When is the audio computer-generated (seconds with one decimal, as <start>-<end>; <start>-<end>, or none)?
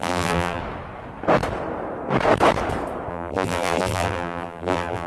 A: 0.0-0.6; 3.1-5.1